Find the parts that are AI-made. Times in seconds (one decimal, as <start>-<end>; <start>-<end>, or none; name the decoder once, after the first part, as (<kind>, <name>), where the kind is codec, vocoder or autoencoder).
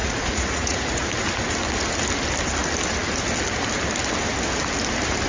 0.0-1.1 (vocoder, Vocos)